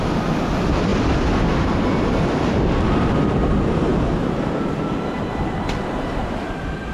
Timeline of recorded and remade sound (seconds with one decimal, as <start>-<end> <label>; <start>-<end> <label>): 0.0-6.9 recorded

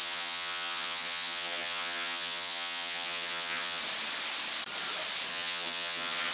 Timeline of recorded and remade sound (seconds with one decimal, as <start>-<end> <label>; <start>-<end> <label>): 0.0-3.8 remade; 3.8-5.3 recorded; 5.3-6.3 remade